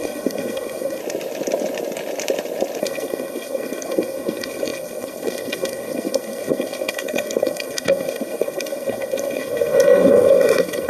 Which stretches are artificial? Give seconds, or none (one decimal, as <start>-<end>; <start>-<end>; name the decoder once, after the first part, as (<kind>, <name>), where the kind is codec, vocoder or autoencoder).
0.0-1.0 (codec, SNAC); 2.8-10.9